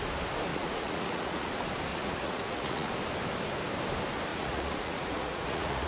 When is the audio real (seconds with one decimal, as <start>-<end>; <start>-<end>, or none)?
0.0-0.5; 1.5-1.9; 2.9-4.3

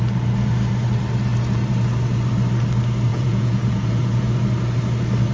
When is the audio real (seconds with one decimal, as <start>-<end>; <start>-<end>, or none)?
0.0-3.1; 4.2-5.3

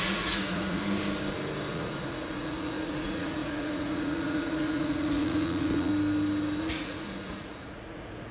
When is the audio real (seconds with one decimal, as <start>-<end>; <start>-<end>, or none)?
0.8-1.7; 5.9-6.6

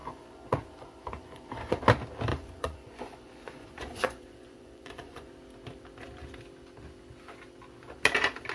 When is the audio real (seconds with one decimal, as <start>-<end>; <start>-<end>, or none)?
1.8-2.3; 5.3-8.5

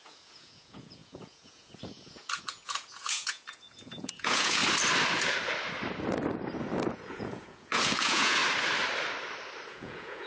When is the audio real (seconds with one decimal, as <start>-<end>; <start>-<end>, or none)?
4.6-6.9; 8.4-9.7

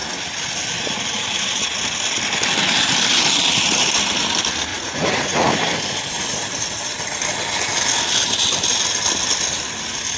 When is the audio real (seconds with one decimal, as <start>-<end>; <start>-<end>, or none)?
0.0-4.7; 5.5-10.2

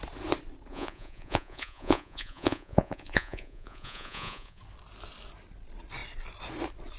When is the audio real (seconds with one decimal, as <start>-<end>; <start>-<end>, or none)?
0.0-0.7; 4.6-7.0